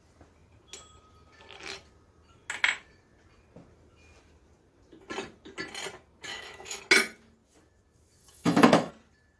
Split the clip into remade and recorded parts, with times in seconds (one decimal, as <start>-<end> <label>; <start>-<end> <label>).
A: 0.0-6.3 recorded; 6.3-6.8 remade; 6.8-8.2 recorded; 8.2-8.9 remade; 8.9-9.4 recorded